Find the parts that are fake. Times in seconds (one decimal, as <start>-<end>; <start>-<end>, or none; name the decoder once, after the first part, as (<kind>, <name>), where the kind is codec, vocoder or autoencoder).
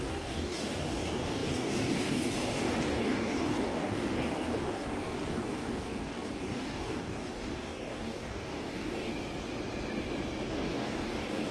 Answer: 0.0-9.1 (codec, DAC); 10.5-11.5